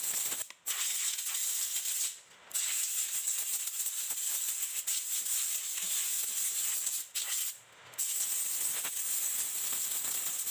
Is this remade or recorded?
recorded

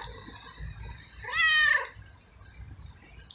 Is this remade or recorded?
recorded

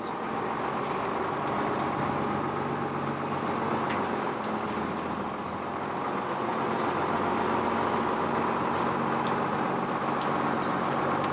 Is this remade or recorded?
recorded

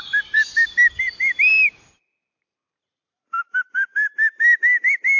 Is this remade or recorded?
remade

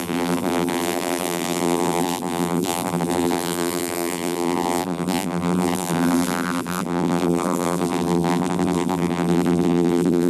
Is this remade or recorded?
remade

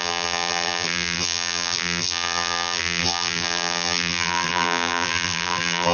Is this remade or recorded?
remade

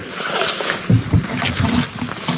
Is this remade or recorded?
recorded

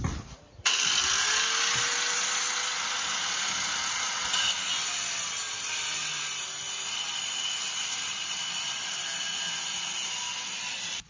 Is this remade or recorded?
recorded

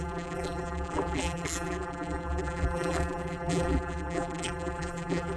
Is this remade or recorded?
remade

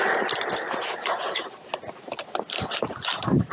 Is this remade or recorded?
remade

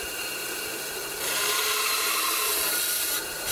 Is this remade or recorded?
remade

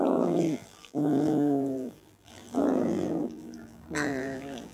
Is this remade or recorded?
remade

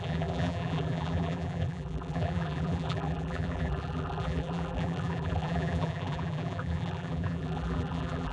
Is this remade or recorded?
remade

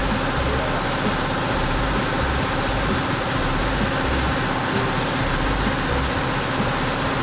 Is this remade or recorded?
recorded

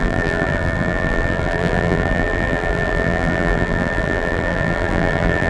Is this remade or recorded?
remade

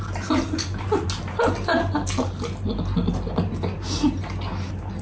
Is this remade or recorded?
recorded